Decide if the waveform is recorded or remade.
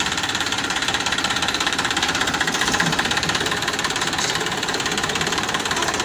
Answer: remade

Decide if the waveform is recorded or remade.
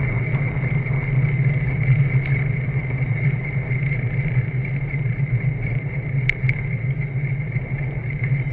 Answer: recorded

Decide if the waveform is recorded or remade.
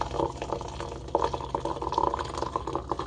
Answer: recorded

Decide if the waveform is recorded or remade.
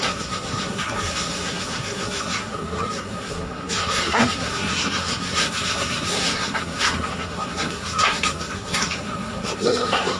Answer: remade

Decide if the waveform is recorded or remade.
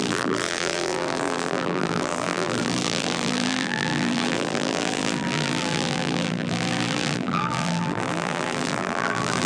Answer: remade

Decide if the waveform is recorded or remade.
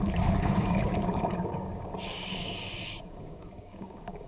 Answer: remade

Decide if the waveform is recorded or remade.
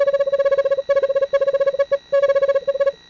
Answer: recorded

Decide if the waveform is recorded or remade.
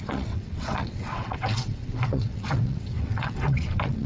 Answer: remade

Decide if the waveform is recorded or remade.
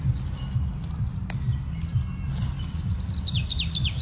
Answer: recorded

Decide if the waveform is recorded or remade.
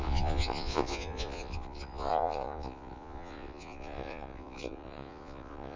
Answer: remade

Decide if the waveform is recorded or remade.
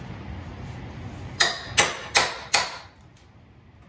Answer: recorded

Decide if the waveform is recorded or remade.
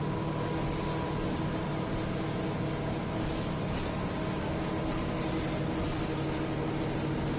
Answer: recorded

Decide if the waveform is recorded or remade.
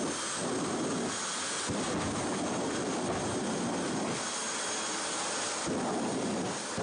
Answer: recorded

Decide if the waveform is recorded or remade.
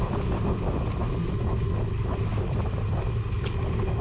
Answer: recorded